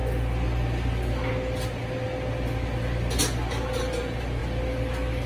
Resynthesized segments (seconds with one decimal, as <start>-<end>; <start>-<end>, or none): none